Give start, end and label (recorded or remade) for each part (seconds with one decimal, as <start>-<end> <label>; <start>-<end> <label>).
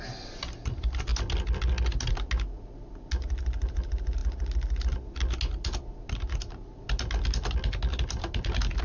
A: 0.0-8.8 recorded